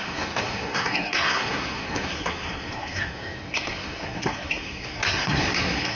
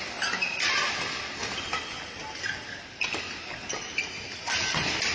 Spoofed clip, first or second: first